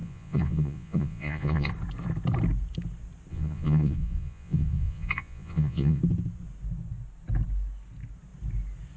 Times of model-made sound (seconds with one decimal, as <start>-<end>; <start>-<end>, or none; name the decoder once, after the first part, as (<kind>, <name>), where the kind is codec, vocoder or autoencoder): 0.0-1.7 (vocoder, Vocos); 3.3-6.0